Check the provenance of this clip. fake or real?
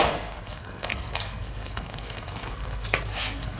fake